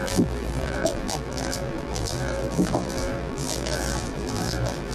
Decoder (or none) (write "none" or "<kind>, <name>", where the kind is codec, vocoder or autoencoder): vocoder, BigVGAN v2